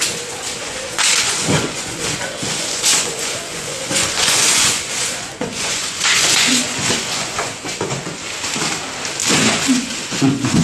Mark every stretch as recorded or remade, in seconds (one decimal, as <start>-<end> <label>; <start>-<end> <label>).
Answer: 0.0-8.2 remade; 8.2-9.3 recorded; 9.3-10.6 remade